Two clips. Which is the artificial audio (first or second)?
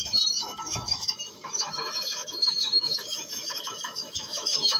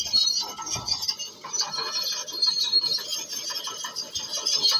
first